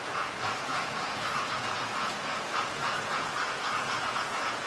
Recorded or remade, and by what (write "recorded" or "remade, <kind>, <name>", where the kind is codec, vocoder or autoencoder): remade, vocoder, Vocos